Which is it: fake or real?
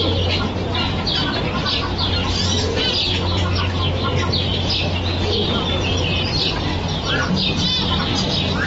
real